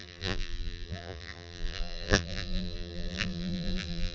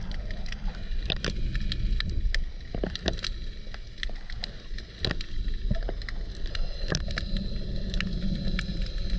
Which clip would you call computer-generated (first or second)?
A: first